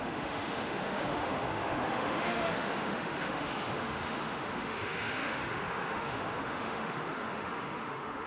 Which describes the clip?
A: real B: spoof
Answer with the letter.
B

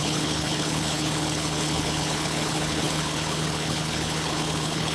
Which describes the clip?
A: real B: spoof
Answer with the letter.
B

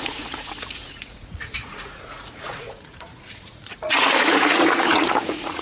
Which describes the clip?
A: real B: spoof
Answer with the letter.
B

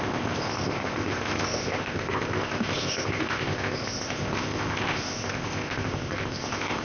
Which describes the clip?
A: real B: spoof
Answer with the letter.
B